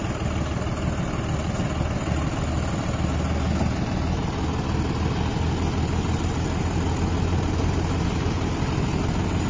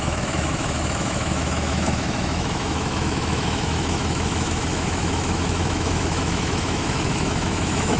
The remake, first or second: second